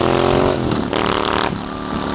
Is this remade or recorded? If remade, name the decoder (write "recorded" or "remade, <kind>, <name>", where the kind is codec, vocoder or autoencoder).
recorded